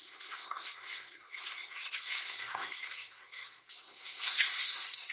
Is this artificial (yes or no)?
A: yes